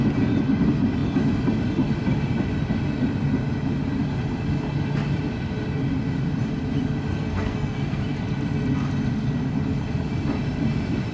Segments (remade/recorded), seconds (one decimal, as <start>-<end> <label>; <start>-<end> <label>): 0.0-7.1 recorded; 7.1-8.0 remade; 8.0-11.1 recorded